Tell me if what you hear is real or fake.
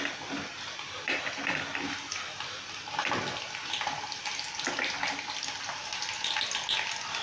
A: real